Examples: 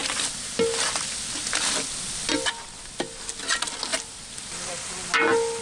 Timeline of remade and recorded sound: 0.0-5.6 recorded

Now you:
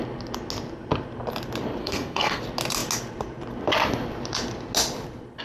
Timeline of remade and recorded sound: 0.0-1.8 recorded; 1.8-2.4 remade; 2.4-5.4 recorded

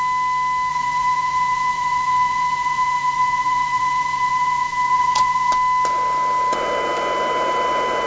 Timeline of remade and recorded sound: 0.0-0.7 recorded; 0.7-5.5 remade; 5.5-8.1 recorded

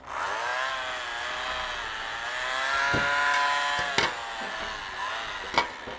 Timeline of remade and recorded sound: 0.0-6.0 recorded

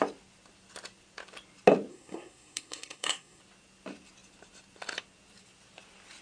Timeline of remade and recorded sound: 0.0-1.9 recorded; 1.9-3.4 remade; 3.4-6.2 recorded

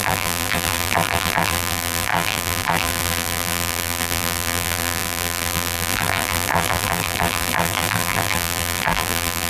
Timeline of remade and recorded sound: 0.0-9.5 remade

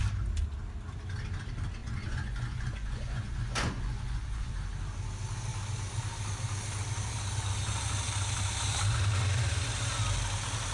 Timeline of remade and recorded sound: 0.0-1.8 recorded; 1.8-4.5 remade; 4.5-10.7 recorded